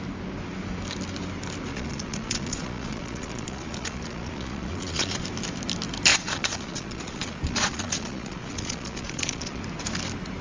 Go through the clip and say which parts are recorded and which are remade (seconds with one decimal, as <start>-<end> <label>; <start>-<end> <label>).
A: 0.0-1.7 recorded; 1.7-5.2 remade; 5.2-6.1 recorded; 6.1-9.6 remade; 9.6-10.4 recorded